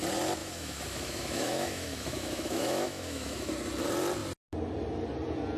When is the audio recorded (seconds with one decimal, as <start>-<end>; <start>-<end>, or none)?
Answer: 0.0-0.4; 3.5-5.6